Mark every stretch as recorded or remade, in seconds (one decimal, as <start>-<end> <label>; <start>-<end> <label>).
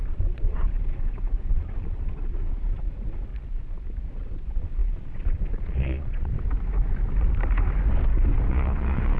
0.0-3.3 remade; 3.3-4.1 recorded; 4.1-6.3 remade; 6.3-8.5 recorded; 8.5-9.2 remade